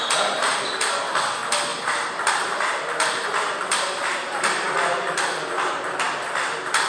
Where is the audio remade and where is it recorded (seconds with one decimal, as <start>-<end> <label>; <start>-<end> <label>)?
0.0-1.7 recorded; 1.7-5.8 remade; 5.8-6.9 recorded